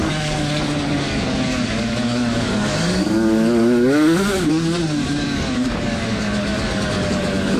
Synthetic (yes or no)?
yes